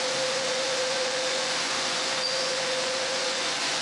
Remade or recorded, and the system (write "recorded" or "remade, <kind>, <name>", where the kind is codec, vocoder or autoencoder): remade, vocoder, Vocos